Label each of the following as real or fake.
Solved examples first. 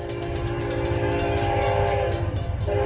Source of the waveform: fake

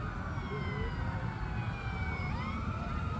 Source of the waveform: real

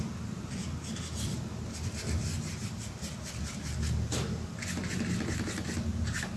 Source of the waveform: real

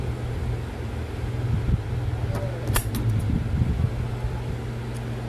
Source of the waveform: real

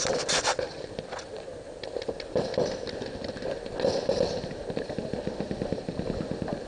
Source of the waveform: real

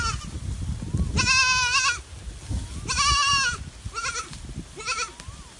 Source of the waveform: real